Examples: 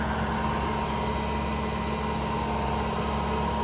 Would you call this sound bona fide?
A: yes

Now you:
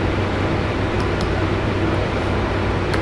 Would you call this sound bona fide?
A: yes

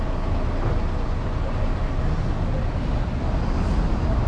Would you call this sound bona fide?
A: yes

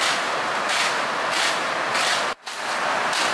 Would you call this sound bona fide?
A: yes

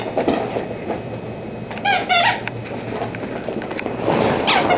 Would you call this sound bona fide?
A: yes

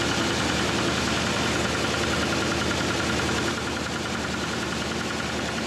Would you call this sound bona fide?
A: yes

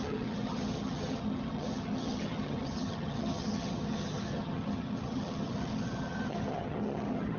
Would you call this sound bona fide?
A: no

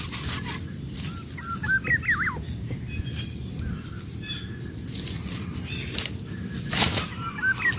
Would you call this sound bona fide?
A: yes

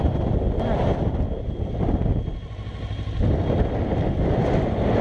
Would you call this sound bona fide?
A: yes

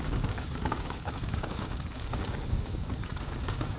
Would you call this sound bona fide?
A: no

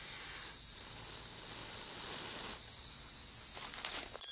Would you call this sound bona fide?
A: yes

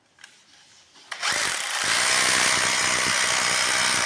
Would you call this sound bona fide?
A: yes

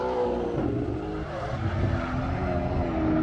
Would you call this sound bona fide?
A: yes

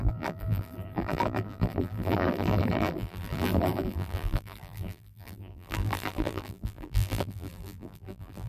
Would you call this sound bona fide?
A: no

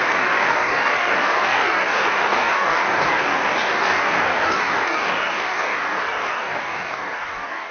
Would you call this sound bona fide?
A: no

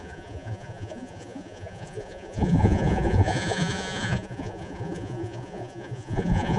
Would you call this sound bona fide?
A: no